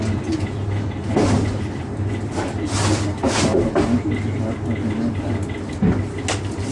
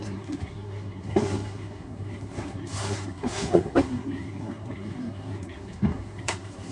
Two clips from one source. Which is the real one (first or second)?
first